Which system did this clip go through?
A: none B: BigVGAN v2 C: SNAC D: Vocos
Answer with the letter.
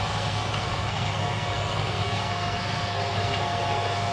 C